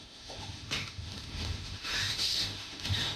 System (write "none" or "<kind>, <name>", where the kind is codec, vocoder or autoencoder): autoencoder, DAC-VAE